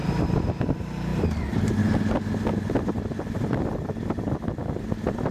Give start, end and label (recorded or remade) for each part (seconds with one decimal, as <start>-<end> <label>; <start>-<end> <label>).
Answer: 0.0-5.3 recorded